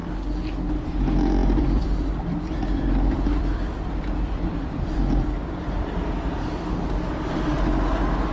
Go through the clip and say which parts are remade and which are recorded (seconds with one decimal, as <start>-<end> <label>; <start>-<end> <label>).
0.0-1.4 recorded; 1.4-5.0 remade; 5.0-8.3 recorded